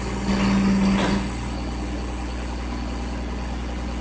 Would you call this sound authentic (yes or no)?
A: yes